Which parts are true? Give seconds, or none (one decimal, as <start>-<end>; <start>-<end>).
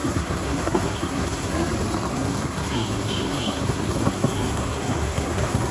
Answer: 1.7-2.1